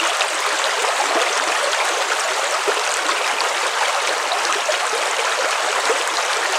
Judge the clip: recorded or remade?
recorded